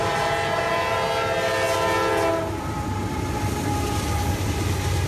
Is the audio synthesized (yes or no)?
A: no